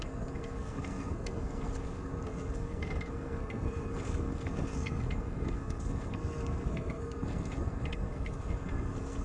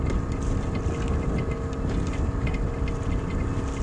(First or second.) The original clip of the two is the second